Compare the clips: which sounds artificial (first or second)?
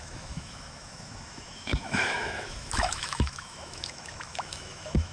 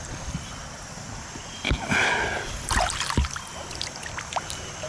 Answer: first